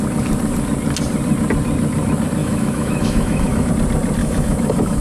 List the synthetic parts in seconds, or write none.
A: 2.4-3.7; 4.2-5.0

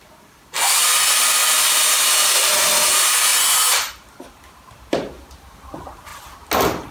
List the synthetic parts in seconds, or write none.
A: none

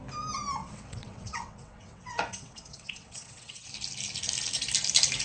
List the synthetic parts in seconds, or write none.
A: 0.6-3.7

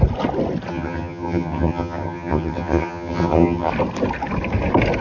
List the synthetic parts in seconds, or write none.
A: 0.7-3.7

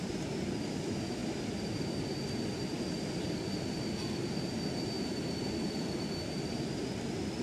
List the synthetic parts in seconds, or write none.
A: none

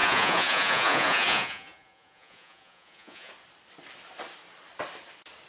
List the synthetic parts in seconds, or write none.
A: 0.0-3.3